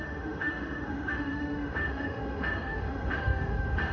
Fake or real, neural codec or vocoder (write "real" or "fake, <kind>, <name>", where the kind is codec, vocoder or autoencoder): fake, autoencoder, DAC-VAE